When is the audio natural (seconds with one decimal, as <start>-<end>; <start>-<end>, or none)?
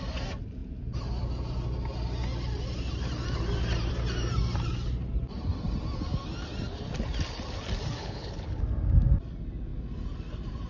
0.0-8.0; 8.6-10.7